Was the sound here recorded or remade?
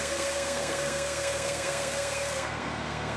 remade